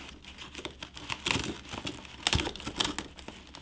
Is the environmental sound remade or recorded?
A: recorded